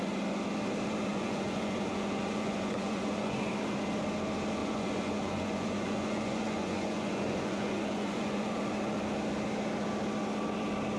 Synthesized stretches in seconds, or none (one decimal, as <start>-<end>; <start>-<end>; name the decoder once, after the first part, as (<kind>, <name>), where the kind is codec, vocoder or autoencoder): 1.1-3.5 (vocoder, Vocos); 4.6-8.6